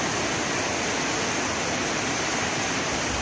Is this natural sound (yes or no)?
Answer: yes